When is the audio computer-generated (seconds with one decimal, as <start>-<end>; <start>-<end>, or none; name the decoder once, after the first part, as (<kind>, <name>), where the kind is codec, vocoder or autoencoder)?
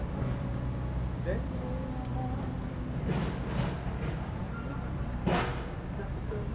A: 0.0-0.5 (vocoder, BigVGAN v2); 4.4-5.3; 5.9-6.5